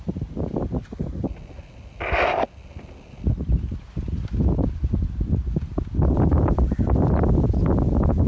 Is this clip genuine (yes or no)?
yes